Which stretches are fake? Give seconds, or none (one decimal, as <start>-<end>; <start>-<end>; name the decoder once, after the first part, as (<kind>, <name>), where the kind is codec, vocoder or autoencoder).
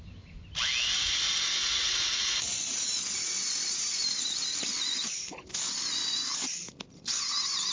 1.6-3.0 (vocoder, Vocos)